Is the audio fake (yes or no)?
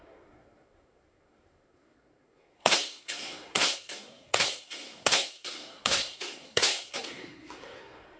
yes